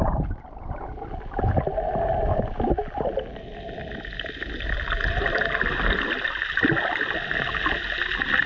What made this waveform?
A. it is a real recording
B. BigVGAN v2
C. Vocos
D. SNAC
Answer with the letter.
A